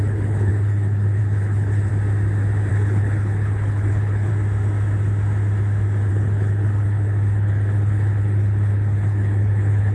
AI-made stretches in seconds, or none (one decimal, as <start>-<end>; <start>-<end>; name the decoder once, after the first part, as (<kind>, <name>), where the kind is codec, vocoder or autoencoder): 0.0-1.9 (codec, HILCodec); 2.7-4.3; 6.1-9.9